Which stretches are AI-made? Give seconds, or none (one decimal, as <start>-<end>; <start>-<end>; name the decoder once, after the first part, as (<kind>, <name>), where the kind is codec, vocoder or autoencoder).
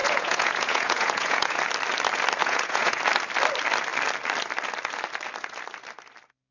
0.0-1.6 (vocoder, Vocos); 2.4-3.0